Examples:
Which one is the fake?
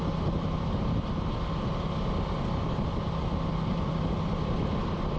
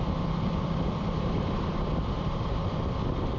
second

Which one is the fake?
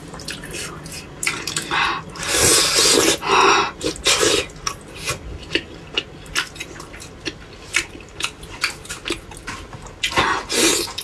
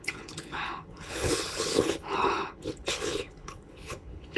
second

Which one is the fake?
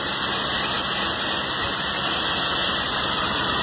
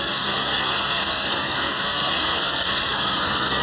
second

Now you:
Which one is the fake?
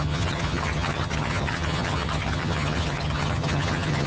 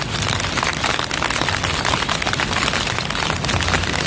first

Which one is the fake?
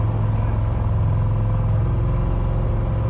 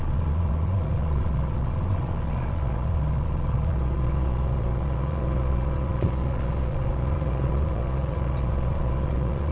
second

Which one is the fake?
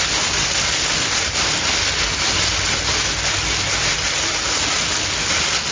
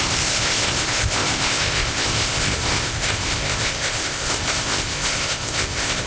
second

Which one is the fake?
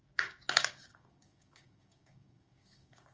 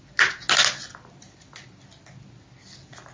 first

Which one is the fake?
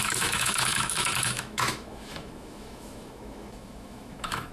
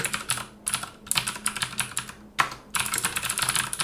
first